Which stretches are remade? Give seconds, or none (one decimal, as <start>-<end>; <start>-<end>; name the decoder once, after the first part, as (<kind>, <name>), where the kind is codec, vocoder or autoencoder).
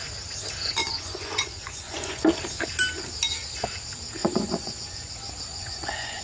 0.8-2.2 (vocoder, Vocos); 4.2-5.1; 5.5-6.2